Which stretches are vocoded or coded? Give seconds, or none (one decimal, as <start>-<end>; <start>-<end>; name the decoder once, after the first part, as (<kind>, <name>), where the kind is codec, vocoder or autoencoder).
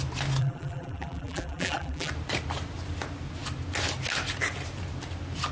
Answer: 0.4-2.1 (vocoder, BigVGAN v2)